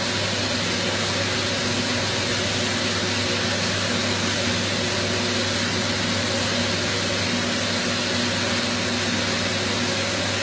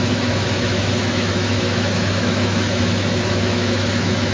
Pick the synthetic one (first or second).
second